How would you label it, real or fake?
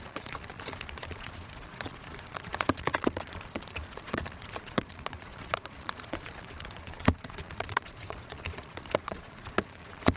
fake